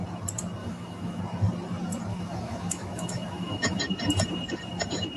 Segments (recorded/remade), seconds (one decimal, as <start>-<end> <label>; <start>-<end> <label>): 0.0-0.6 recorded; 0.6-1.2 remade; 1.2-2.1 recorded; 2.1-3.8 remade; 3.8-5.2 recorded